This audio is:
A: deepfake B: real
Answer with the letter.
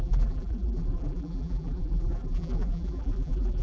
A